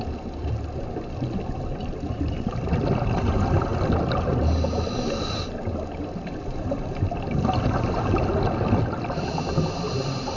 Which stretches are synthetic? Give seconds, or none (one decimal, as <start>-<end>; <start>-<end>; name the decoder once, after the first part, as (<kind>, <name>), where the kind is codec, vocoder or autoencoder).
none